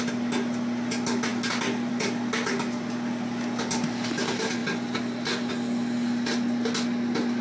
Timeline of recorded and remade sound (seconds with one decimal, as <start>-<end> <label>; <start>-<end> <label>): 0.0-7.4 recorded